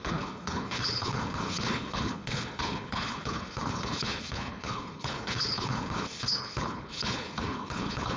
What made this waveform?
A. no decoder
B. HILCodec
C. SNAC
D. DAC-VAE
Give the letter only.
B